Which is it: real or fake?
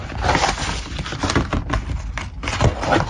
real